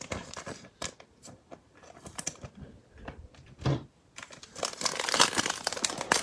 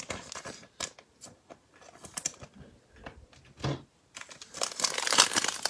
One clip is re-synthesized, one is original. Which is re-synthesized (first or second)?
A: first